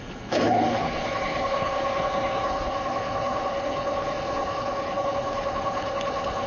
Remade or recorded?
remade